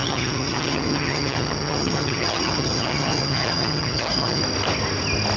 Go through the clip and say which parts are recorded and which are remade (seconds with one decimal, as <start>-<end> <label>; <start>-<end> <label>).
0.0-4.4 remade; 4.4-5.4 recorded